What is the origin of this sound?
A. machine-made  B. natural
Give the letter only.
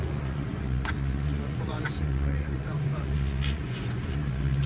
A